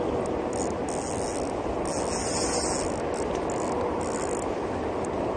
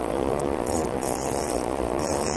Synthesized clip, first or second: second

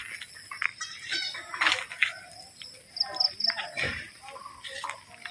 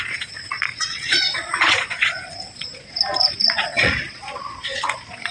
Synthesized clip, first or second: second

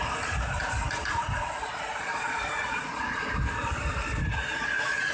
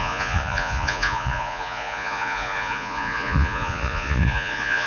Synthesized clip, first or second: second